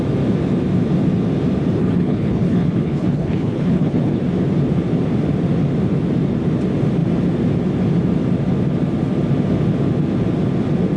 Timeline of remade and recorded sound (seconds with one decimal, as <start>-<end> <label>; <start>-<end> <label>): 0.0-1.8 recorded; 1.8-4.2 remade; 4.2-11.0 recorded